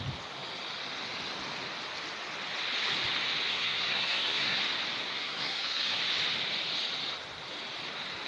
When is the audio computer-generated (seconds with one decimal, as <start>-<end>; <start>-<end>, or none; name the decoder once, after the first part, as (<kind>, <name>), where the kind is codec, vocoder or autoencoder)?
3.5-4.6 (codec, SNAC); 5.0-6.0